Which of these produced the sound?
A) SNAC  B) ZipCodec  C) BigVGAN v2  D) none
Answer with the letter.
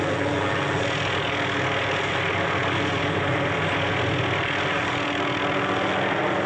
D